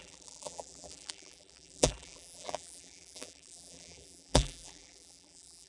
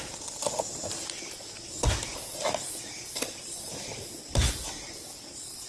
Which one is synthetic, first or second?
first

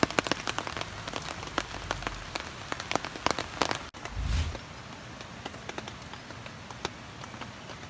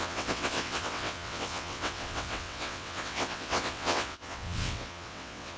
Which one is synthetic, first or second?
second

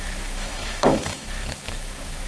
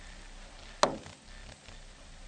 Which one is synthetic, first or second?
first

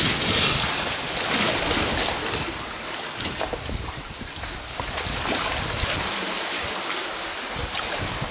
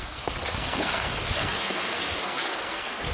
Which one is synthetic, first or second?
second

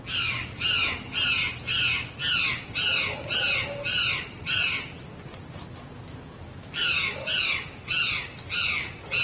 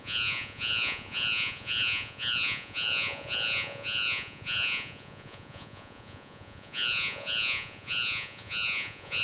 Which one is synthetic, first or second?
second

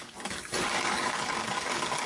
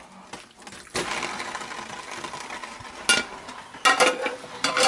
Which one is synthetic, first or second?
first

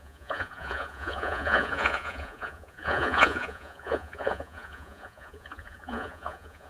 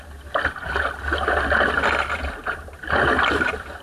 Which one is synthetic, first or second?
first